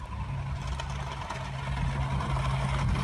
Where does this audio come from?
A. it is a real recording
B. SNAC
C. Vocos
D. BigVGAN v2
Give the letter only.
A